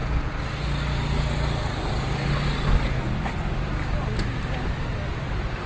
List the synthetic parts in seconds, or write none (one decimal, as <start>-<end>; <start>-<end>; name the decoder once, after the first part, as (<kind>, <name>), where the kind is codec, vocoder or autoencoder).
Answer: none